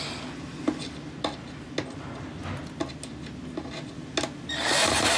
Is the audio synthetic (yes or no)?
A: no